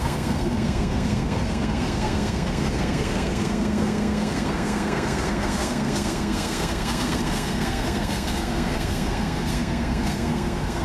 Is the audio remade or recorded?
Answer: remade